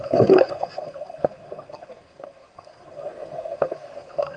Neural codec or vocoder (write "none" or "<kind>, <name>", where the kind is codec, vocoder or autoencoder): codec, SNAC